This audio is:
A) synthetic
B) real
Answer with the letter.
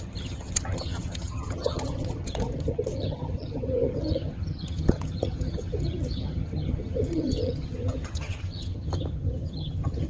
A